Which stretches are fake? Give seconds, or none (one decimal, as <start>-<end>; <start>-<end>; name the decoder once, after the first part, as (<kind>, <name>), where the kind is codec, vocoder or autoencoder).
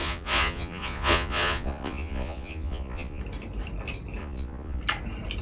0.0-3.2 (vocoder, Vocos); 4.2-4.8